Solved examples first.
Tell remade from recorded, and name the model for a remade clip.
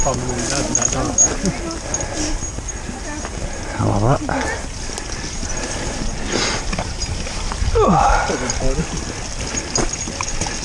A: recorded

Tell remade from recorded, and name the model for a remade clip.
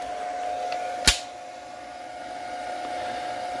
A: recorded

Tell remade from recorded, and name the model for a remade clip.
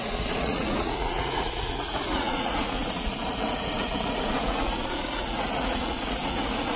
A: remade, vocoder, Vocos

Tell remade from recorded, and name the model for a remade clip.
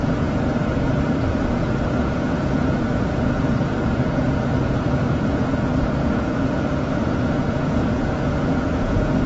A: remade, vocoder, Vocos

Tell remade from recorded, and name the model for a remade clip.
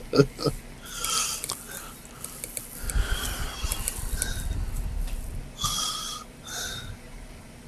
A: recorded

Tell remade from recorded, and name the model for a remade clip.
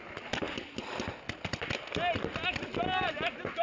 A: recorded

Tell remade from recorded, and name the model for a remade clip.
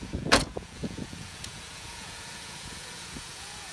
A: remade, vocoder, Vocos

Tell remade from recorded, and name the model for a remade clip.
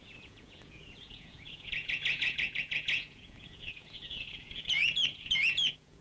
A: remade, vocoder, Vocos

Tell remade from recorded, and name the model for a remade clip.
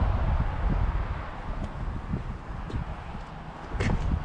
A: recorded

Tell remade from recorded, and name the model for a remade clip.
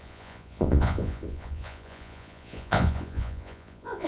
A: remade, vocoder, Vocos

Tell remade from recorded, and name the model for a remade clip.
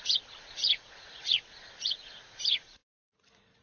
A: remade, vocoder, Vocos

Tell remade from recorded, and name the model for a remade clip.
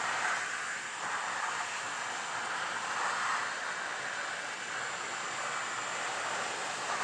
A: recorded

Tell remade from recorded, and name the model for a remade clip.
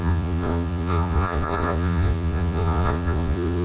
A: remade, vocoder, Vocos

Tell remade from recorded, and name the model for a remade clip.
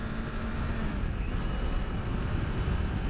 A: recorded